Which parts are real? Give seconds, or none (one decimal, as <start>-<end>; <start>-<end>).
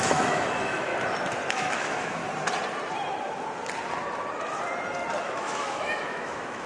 0.9-1.5; 2.2-5.2